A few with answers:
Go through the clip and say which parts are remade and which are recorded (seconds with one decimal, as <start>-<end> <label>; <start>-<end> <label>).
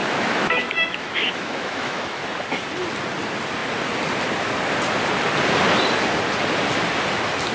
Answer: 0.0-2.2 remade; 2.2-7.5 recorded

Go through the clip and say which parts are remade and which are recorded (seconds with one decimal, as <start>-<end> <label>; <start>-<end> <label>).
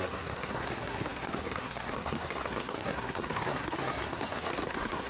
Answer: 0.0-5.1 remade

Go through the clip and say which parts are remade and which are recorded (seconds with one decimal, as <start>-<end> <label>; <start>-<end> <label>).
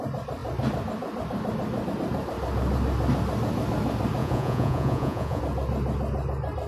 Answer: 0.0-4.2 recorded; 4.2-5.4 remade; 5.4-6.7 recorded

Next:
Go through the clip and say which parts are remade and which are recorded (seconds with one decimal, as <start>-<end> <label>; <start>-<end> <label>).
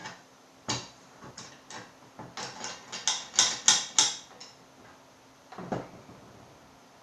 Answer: 0.0-1.5 remade; 1.5-7.0 recorded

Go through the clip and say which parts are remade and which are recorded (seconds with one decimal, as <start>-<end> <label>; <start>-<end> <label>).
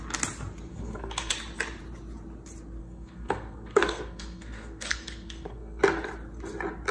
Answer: 0.0-0.7 recorded; 0.7-1.3 remade; 1.3-2.8 recorded; 2.8-5.8 remade; 5.8-6.9 recorded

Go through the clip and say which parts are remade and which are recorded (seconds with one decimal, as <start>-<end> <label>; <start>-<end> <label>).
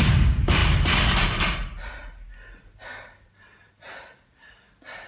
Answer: 0.0-5.1 recorded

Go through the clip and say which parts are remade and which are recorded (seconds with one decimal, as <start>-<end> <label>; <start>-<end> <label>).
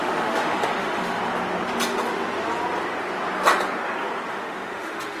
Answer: 0.0-1.2 remade; 1.2-4.3 recorded; 4.3-5.2 remade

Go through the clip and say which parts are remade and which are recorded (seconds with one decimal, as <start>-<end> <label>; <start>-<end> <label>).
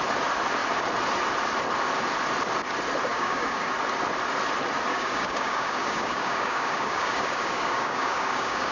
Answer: 0.0-3.1 recorded; 3.1-3.7 remade; 3.7-4.9 recorded; 4.9-8.7 remade